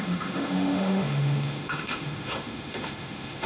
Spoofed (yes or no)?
yes